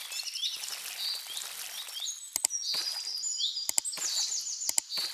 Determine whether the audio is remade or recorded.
recorded